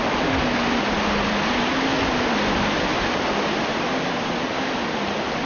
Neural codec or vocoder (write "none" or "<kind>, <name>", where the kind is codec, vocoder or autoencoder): none